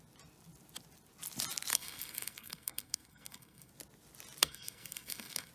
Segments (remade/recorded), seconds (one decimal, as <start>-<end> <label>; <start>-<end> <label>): 0.0-1.7 recorded; 1.7-3.7 remade; 3.7-4.4 recorded; 4.4-5.5 remade

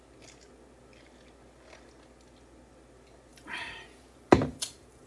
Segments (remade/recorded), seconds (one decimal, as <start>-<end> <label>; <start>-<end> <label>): 0.0-3.3 recorded; 3.3-5.1 remade

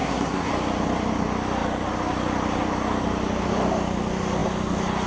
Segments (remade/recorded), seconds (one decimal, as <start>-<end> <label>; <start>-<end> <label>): 0.0-0.5 remade; 0.5-5.1 recorded

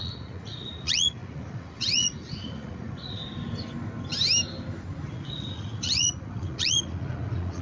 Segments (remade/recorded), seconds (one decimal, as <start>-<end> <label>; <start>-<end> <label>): 0.0-3.2 remade; 3.2-5.1 recorded; 5.1-7.6 remade